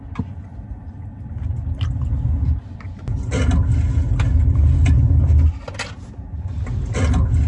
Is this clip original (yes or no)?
yes